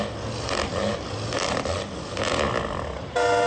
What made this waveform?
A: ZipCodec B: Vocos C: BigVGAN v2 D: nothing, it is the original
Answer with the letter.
D